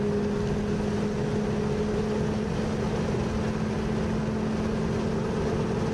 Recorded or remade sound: recorded